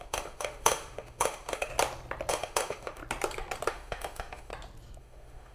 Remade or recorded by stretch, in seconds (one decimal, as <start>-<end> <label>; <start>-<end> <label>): 0.0-1.7 remade; 1.7-2.3 recorded; 2.3-3.0 remade; 3.0-3.7 recorded; 3.7-4.5 remade; 4.5-5.0 recorded; 5.0-5.5 remade